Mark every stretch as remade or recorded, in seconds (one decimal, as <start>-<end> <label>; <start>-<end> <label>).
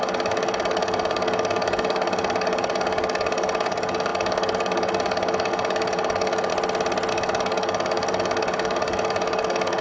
0.0-6.5 remade; 6.5-7.1 recorded; 7.1-9.8 remade